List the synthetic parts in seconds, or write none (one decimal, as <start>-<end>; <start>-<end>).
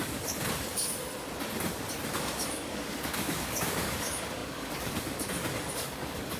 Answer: 0.0-0.9; 2.1-6.4